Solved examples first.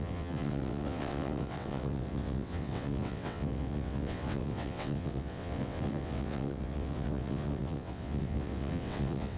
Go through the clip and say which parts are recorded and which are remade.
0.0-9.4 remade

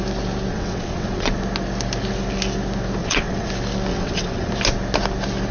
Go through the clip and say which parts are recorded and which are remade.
0.0-0.5 recorded; 0.5-1.3 remade; 1.3-3.0 recorded; 3.0-3.5 remade; 3.5-3.9 recorded; 3.9-4.5 remade; 4.5-5.5 recorded

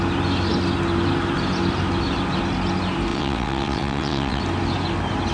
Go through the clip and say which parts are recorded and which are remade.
0.0-3.1 recorded; 3.1-4.4 remade; 4.4-5.3 recorded

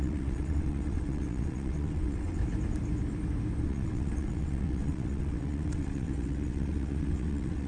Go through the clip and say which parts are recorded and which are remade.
0.0-2.4 remade; 2.4-3.6 recorded; 3.6-7.7 remade

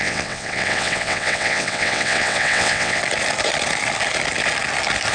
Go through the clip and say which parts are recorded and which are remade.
0.0-3.0 remade; 3.0-5.1 recorded

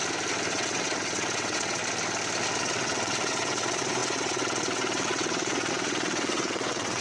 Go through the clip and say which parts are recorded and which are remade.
0.0-0.5 recorded; 0.5-1.8 remade; 1.8-2.6 recorded; 2.6-7.0 remade

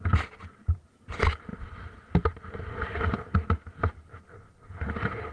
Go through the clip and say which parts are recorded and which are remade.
0.0-5.3 recorded

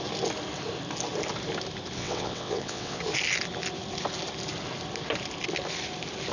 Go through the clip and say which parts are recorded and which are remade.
0.0-2.0 recorded; 2.0-3.0 remade; 3.0-6.3 recorded